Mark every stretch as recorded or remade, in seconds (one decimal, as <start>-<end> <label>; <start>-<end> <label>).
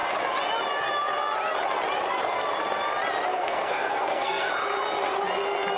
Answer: 0.0-3.3 recorded; 3.3-4.5 remade; 4.5-5.8 recorded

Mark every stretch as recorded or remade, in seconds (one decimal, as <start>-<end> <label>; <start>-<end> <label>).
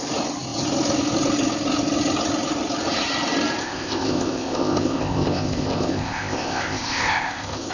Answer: 0.0-3.6 recorded; 3.6-7.7 remade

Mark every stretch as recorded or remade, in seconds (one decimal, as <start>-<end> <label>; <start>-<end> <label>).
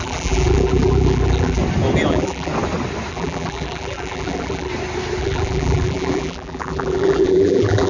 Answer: 0.0-1.6 remade; 1.6-2.1 recorded; 2.1-2.5 remade; 2.5-3.1 recorded; 3.1-4.7 remade; 4.7-5.2 recorded; 5.2-7.9 remade